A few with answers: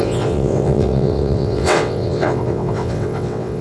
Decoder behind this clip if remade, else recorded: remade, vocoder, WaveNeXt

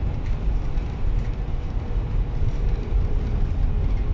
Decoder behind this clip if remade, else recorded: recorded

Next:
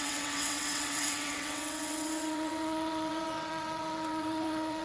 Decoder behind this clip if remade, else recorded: remade, vocoder, WaveNeXt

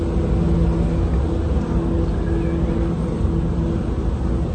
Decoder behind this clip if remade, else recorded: recorded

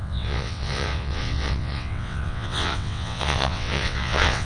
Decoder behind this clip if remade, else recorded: remade, vocoder, WaveNeXt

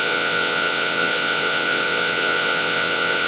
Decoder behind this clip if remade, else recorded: remade, vocoder, WaveNeXt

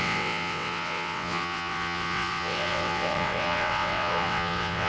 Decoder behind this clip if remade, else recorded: remade, vocoder, WaveNeXt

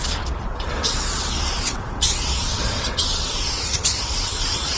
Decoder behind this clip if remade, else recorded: remade, vocoder, WaveNeXt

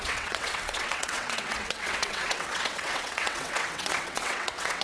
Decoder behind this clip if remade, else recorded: remade, vocoder, WaveNeXt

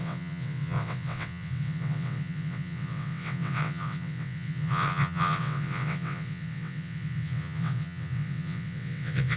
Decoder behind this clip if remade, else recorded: remade, vocoder, WaveNeXt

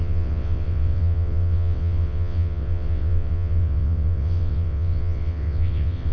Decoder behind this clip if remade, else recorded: remade, vocoder, WaveNeXt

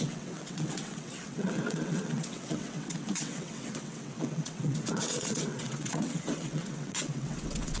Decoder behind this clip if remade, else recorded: remade, vocoder, WaveNeXt